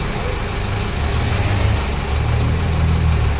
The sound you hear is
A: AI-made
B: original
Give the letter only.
B